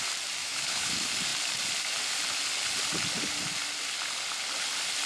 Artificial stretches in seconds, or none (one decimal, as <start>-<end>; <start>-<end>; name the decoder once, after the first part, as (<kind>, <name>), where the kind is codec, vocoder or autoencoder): 0.4-0.9 (autoencoder, DAC-VAE)